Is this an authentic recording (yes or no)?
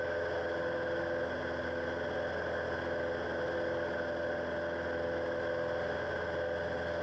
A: yes